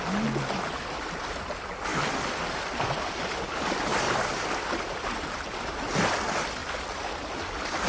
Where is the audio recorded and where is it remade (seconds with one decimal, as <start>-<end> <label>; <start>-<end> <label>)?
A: 0.0-1.9 recorded; 1.9-3.1 remade; 3.1-3.9 recorded; 3.9-5.8 remade; 5.8-6.6 recorded; 6.6-7.9 remade